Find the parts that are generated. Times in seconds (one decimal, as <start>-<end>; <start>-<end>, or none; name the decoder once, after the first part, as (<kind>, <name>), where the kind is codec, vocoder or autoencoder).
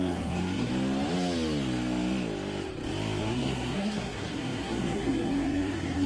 0.0-0.7 (codec, SNAC); 3.2-6.1